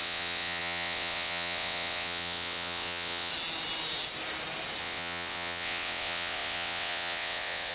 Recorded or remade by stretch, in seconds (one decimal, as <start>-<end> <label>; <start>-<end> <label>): 0.0-3.3 remade; 3.3-4.8 recorded; 4.8-7.7 remade